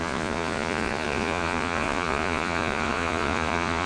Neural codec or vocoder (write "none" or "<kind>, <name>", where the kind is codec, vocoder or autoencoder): vocoder, Vocos